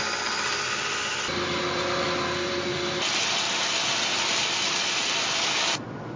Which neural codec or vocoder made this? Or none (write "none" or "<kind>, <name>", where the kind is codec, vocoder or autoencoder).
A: none